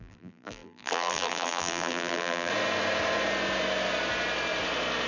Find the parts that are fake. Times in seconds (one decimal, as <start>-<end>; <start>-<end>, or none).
0.0-2.5